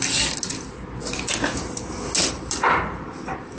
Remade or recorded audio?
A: recorded